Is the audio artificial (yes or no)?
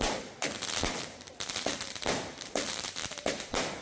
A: no